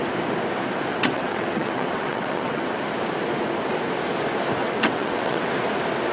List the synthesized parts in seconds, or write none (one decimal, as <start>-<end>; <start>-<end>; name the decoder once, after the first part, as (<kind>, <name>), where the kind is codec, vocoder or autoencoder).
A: 0.9-2.8 (vocoder, WaveNeXt); 4.6-5.5